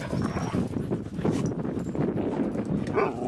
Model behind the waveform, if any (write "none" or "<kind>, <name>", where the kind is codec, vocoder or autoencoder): none